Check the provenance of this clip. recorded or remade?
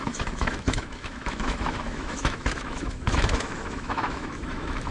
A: remade